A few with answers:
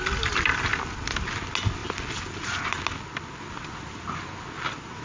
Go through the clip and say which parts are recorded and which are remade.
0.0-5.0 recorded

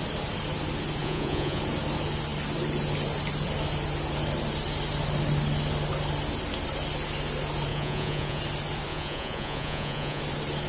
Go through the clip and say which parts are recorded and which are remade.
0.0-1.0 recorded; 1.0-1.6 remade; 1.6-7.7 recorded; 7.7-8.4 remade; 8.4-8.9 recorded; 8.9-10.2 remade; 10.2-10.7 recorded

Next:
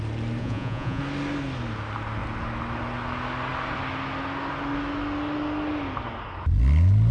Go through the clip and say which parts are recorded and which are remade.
0.0-0.4 recorded; 0.4-1.0 remade; 1.0-7.1 recorded